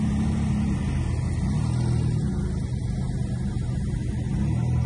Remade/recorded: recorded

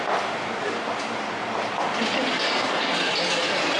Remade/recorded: remade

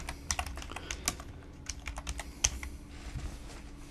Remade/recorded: recorded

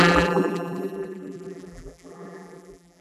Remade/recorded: remade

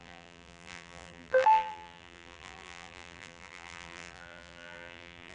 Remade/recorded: remade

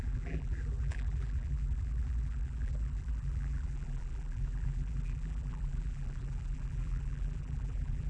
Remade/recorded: remade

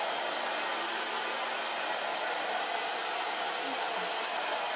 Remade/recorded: recorded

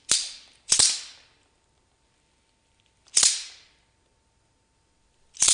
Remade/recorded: recorded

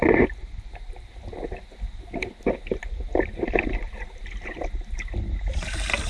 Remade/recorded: recorded